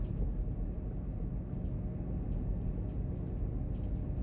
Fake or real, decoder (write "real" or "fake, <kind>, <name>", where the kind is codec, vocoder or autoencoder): real